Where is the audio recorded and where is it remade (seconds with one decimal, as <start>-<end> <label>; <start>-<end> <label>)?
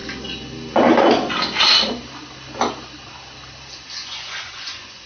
0.0-4.0 recorded; 4.0-5.1 remade